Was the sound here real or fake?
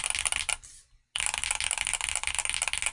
real